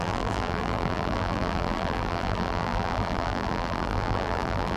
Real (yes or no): no